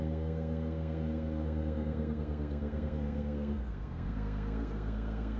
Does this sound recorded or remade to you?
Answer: remade